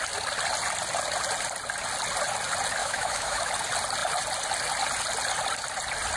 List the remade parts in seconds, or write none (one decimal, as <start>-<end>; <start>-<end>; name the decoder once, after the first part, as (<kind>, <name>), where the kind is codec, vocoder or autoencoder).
2.8-3.5 (autoencoder, DAC-VAE)